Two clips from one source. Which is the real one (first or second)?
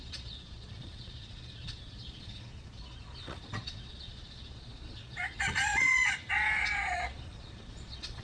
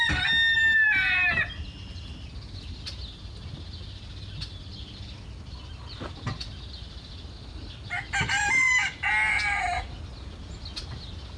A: second